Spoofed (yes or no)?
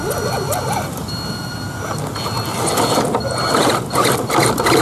no